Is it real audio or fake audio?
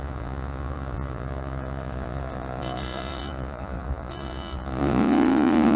fake